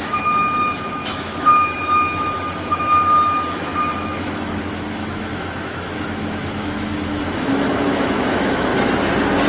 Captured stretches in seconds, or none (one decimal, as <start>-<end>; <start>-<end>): 8.7-9.5

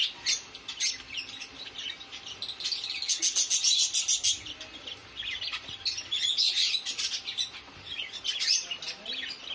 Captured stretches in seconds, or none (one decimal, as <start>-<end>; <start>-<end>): 0.0-9.5

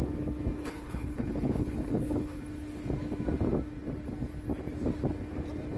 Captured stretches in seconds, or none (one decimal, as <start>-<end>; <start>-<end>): 0.0-0.6; 2.4-5.8

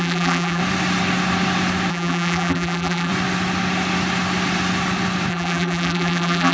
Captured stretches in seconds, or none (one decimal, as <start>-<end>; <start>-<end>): 0.6-1.9; 3.1-5.3

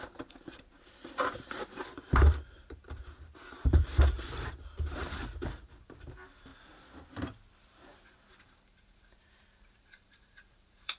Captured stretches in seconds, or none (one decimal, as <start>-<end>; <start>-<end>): 6.5-7.6

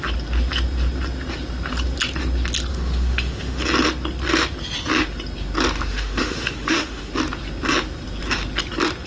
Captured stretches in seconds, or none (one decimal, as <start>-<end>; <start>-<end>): 0.0-2.7; 3.6-5.9; 7.1-9.1

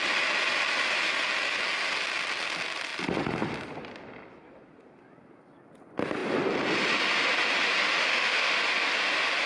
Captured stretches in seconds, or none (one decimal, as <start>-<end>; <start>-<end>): 0.0-8.0; 8.5-9.5